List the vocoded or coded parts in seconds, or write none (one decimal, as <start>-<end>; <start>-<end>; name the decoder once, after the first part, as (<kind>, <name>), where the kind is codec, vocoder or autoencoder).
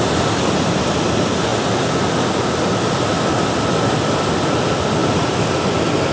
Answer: none